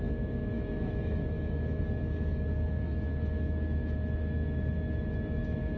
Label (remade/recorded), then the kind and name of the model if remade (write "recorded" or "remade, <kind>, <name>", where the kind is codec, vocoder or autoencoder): remade, autoencoder, DAC-VAE